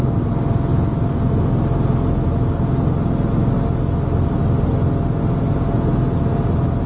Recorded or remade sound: recorded